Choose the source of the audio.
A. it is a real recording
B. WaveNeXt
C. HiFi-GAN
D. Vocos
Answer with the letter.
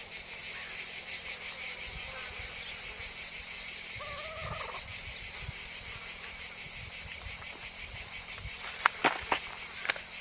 A